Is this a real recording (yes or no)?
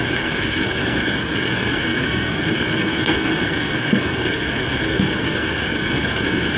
no